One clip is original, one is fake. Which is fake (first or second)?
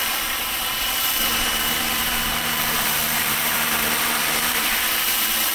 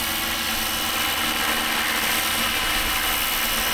first